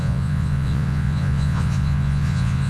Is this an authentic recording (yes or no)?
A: no